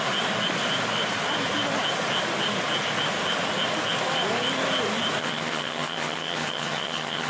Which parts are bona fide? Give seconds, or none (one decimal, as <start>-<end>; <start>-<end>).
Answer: 0.0-5.2